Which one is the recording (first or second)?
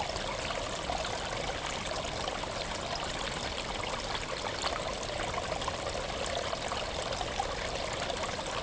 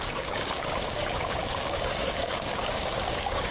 first